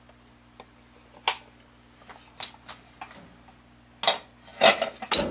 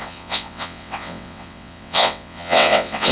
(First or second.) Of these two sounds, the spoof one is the second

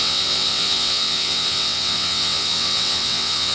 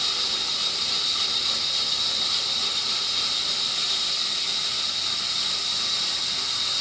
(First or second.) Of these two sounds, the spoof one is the first